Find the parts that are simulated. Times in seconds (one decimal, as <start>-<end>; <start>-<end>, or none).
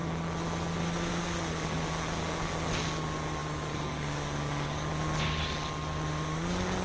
3.4-4.9